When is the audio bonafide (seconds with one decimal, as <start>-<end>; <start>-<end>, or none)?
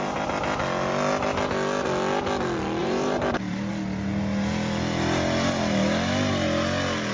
0.0-2.8; 3.7-7.1